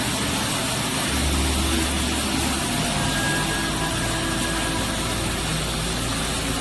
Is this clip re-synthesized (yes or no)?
no